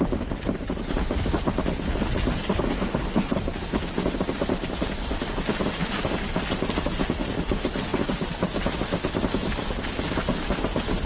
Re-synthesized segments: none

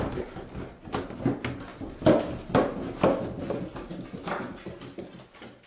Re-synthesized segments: none